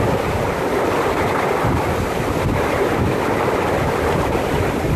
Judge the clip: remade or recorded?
recorded